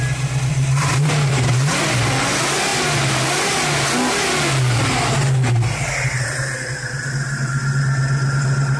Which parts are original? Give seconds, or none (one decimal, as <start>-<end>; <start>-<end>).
0.0-0.5; 1.5-8.8